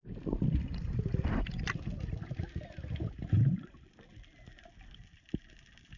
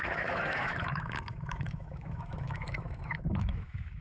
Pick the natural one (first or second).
first